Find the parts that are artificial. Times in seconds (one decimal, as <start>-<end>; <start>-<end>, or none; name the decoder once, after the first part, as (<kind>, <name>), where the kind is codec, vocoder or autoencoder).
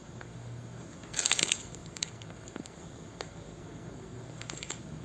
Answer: 0.0-5.0 (codec, SNAC)